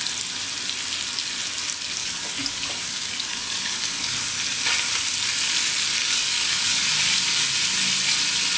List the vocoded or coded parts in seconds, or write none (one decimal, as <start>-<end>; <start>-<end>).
2.0-4.2; 6.0-6.9